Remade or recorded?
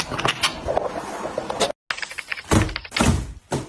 recorded